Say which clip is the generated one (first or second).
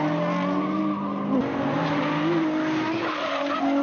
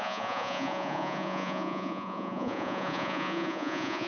second